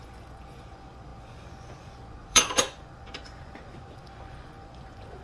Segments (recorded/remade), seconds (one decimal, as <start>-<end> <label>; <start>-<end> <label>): 0.0-5.2 remade